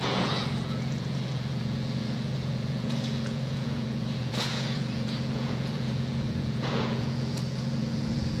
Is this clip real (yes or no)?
no